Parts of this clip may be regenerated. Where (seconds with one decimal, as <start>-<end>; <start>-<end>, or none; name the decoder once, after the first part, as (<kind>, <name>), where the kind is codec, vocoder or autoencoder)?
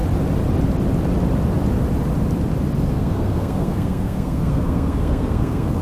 2.9-5.8 (codec, SNAC)